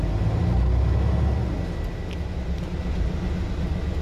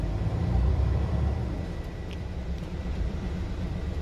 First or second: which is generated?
second